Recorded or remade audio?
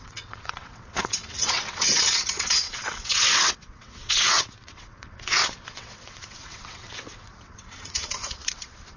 remade